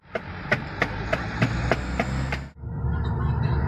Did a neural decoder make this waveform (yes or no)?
no